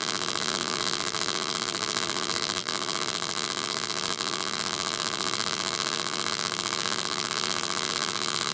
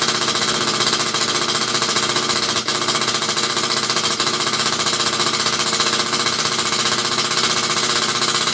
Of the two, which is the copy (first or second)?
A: first